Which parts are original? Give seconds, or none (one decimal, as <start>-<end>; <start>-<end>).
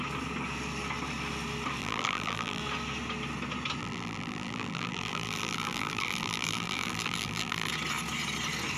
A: 0.0-1.8; 2.6-3.8; 7.7-8.8